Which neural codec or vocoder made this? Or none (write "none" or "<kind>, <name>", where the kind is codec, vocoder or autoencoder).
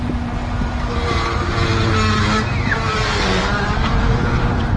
none